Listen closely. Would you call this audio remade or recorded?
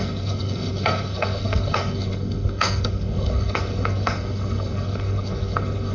remade